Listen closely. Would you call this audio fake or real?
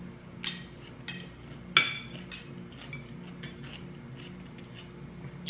real